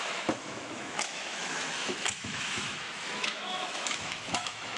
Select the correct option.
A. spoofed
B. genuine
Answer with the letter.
A